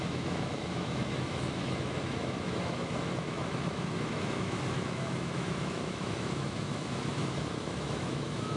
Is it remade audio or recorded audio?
remade